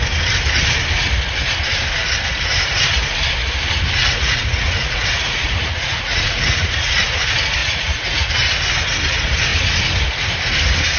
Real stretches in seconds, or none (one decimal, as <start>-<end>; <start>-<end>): 0.0-4.0; 7.0-7.6; 8.3-11.0